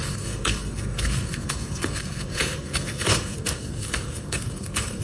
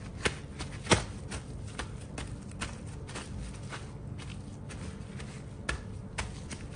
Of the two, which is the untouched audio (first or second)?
second